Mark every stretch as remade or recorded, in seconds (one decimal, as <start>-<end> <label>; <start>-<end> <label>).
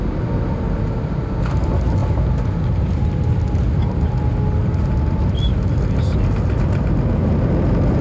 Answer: 0.0-8.0 recorded